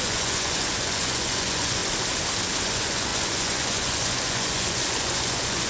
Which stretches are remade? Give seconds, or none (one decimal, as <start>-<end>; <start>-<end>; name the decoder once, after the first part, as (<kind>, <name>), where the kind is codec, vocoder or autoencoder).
0.0-1.8 (vocoder, Vocos); 2.6-5.7